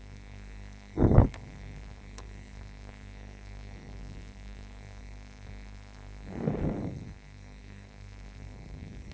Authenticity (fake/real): fake